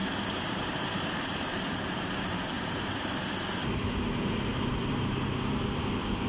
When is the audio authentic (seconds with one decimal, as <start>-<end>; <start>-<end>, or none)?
3.8-4.5; 5.2-6.3